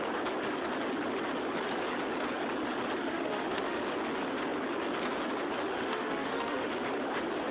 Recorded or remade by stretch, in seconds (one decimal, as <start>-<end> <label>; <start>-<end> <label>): 0.0-3.0 recorded; 3.0-3.8 remade; 3.8-5.7 recorded; 5.7-6.7 remade; 6.7-7.5 recorded

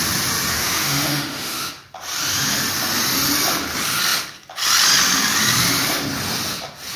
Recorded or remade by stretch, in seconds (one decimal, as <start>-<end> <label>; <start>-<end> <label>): 0.0-0.5 recorded; 0.5-1.7 remade; 1.7-7.0 recorded